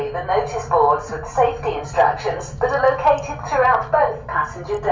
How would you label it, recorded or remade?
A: recorded